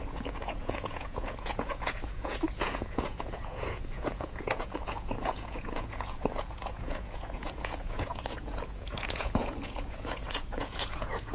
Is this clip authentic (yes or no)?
no